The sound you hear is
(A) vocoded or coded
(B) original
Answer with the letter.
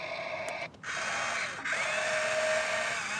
B